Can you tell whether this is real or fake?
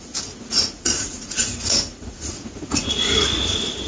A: fake